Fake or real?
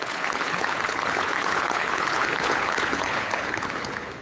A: fake